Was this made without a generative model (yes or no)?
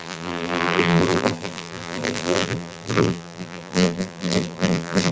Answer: no